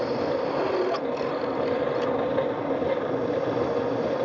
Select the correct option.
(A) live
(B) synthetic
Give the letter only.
A